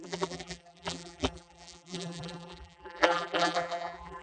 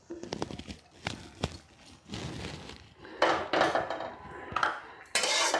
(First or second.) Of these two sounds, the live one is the second